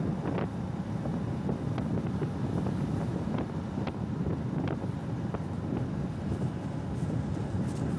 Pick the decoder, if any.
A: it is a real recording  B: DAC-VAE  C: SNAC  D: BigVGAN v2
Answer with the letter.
A